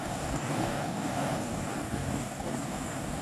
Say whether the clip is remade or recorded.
remade